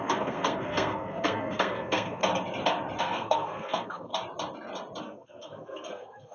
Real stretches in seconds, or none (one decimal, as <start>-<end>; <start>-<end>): 2.2-3.0; 4.1-5.0

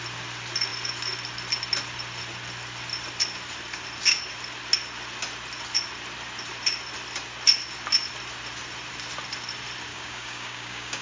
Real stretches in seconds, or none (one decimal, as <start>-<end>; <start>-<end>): 0.0-9.9

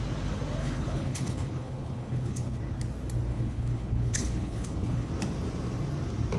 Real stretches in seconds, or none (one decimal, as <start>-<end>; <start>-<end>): 0.0-0.6; 2.6-3.3; 5.1-6.4

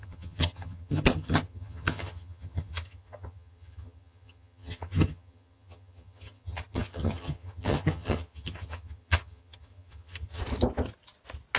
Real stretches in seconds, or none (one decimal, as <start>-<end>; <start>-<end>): 10.4-11.6